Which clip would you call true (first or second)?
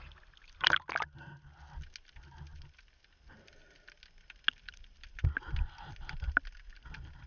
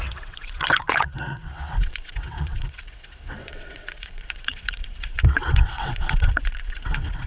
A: first